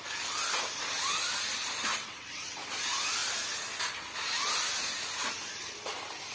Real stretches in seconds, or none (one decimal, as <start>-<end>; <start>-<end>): 0.0-1.9; 2.6-6.3